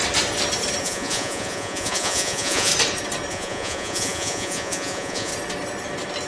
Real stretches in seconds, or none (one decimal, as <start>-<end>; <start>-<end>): 0.0-0.8; 2.7-3.3; 5.3-6.3